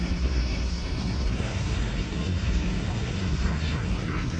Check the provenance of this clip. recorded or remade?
remade